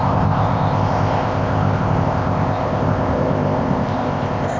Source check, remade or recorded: remade